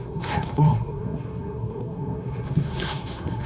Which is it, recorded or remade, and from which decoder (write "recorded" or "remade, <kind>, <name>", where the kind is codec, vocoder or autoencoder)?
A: remade, codec, SNAC